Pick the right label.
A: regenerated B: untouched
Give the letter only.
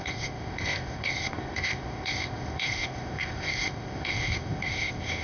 A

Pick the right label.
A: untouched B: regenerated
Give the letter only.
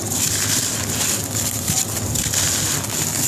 A